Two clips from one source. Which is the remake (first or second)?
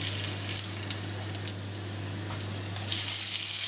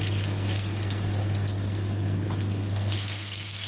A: second